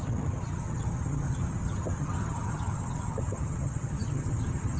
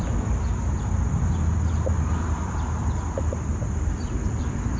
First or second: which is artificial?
first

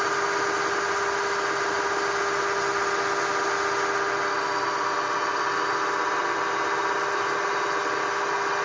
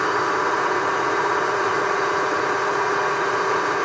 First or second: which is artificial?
second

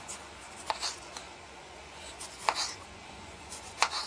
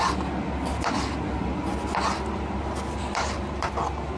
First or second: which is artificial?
first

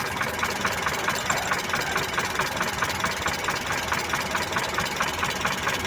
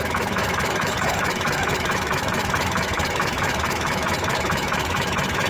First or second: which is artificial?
second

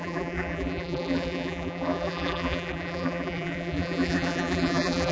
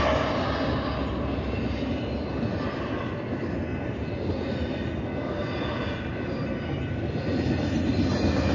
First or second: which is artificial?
first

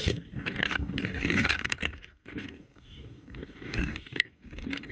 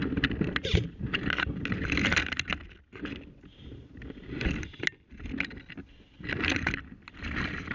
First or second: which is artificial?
first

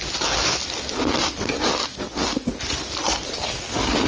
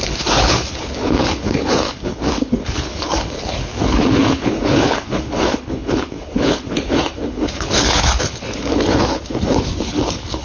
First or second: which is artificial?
second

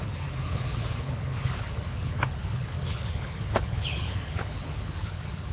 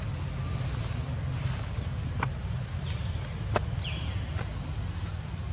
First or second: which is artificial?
first